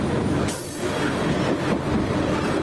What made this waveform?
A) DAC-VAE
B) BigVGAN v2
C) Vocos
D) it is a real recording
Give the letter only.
D